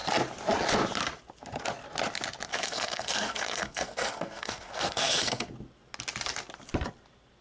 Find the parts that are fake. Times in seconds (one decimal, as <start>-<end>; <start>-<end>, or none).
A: 2.5-5.5